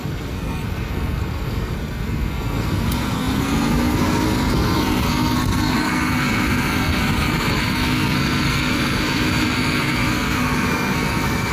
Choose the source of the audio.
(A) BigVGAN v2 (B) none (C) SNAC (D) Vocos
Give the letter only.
C